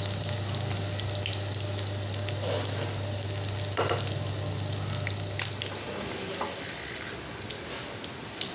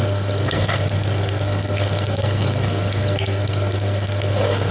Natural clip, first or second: first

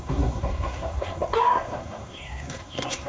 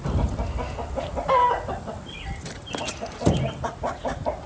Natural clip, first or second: second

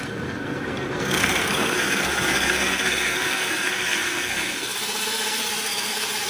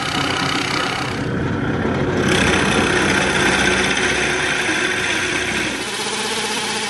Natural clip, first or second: second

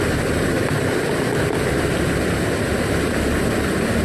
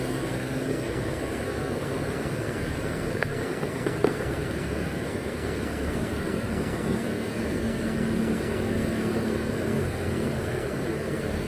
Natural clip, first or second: first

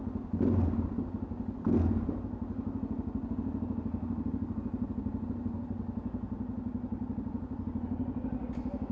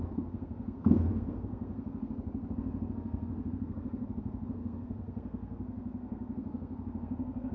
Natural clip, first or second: first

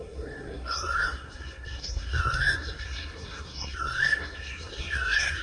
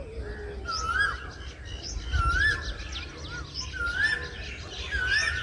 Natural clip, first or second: second